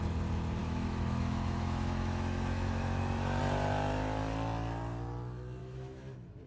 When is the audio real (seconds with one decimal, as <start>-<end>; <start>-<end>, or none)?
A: 0.0-0.6; 3.4-5.6